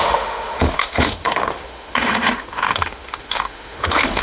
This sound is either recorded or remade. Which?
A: remade